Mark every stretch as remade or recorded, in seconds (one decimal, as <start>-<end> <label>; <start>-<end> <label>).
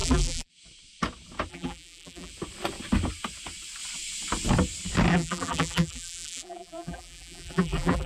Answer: 0.0-0.5 remade; 0.5-1.5 recorded; 1.5-2.3 remade; 2.3-5.1 recorded; 5.1-8.1 remade